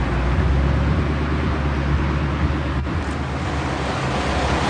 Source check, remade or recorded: recorded